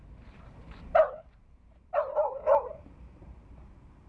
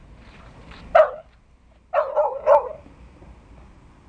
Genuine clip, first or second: second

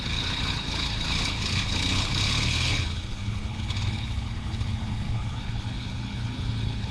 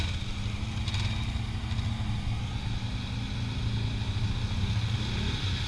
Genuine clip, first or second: second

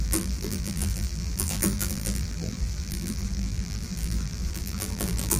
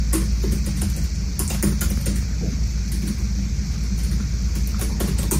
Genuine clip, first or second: second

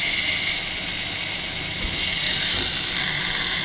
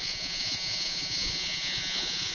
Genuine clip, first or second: first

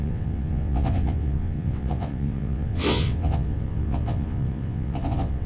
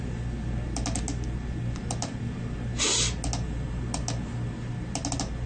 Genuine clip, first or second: second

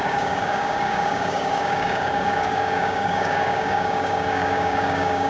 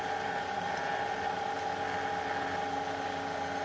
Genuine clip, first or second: second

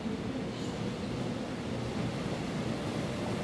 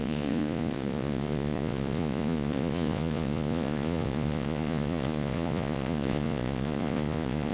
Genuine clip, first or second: first